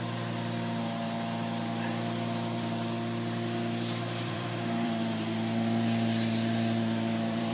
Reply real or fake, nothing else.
fake